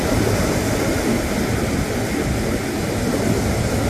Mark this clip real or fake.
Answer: real